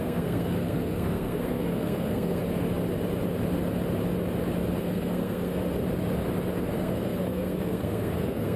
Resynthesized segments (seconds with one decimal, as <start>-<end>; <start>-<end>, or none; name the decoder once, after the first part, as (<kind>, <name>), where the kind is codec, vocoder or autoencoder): 0.0-2.4 (codec, SNAC); 4.8-5.6; 6.6-8.6